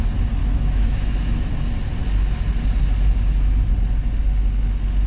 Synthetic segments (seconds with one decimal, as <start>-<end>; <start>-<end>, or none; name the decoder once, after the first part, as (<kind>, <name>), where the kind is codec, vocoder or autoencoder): 0.4-1.5 (autoencoder, DAC-VAE)